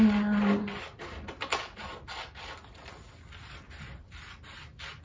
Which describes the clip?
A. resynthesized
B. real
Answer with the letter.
B